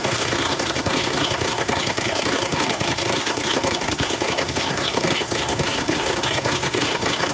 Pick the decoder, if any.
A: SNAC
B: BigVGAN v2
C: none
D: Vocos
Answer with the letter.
A